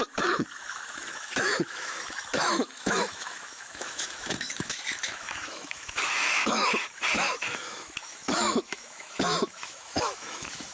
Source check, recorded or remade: remade